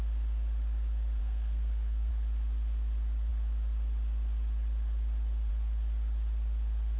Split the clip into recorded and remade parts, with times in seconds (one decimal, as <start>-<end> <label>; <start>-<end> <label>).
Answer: 0.0-1.2 recorded; 1.2-2.1 remade; 2.1-7.0 recorded